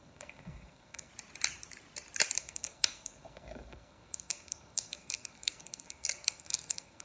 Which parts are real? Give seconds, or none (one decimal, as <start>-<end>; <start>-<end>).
1.1-2.4